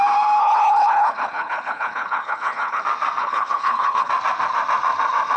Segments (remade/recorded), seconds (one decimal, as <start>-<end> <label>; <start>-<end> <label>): 0.0-0.4 recorded; 0.4-2.8 remade; 2.8-3.2 recorded; 3.2-4.1 remade; 4.1-5.4 recorded

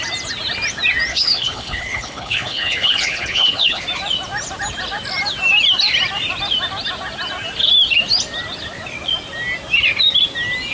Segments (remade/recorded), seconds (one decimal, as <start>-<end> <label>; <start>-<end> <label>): 0.0-1.1 recorded; 1.1-3.8 remade; 3.8-10.7 recorded

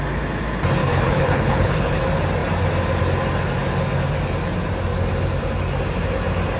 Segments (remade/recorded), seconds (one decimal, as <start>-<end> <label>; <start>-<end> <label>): 0.0-0.8 recorded; 0.8-2.0 remade; 2.0-6.6 recorded

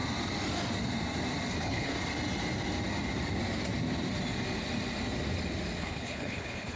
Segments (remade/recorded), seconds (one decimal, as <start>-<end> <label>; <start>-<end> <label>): 0.0-1.5 recorded; 1.5-1.9 remade; 1.9-5.8 recorded; 5.8-6.8 remade